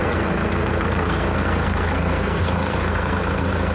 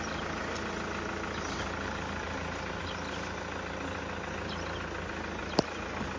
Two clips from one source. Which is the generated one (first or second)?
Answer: first